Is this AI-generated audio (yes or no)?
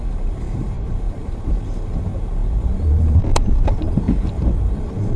yes